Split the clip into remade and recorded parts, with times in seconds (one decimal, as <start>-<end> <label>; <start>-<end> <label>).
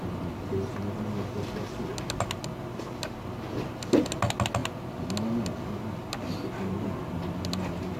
0.0-8.0 recorded